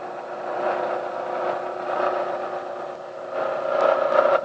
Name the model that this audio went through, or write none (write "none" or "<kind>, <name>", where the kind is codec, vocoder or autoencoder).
none